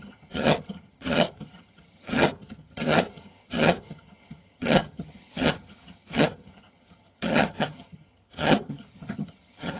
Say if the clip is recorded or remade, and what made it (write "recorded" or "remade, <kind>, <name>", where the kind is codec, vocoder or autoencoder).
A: remade, vocoder, HiFi-GAN